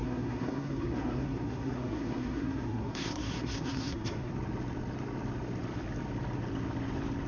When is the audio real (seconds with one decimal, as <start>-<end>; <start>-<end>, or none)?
4.3-7.3